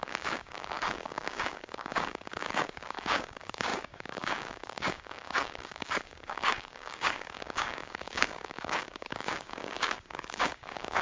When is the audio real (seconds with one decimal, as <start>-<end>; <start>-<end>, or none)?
none